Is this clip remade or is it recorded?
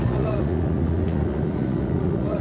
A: remade